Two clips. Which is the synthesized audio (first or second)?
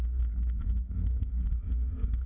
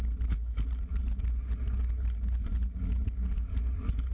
first